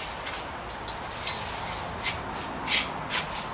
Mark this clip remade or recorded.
recorded